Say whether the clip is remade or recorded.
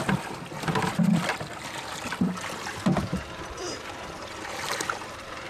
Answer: remade